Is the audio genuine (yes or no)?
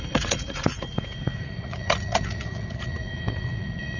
no